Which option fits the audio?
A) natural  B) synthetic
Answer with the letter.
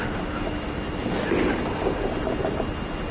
A